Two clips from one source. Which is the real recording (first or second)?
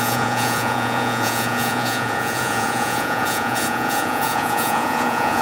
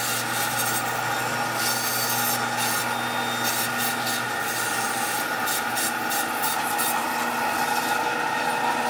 second